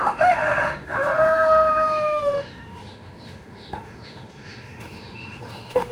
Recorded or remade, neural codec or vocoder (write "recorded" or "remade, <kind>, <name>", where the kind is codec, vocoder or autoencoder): remade, autoencoder, DAC-VAE